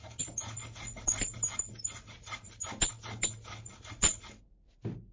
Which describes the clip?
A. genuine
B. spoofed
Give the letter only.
A